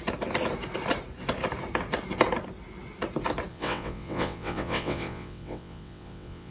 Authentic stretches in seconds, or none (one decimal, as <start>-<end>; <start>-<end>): 0.0-3.5